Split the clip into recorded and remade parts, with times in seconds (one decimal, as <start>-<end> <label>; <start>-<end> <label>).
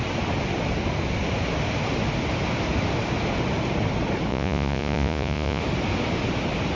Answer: 0.0-4.3 recorded; 4.3-5.6 remade; 5.6-6.8 recorded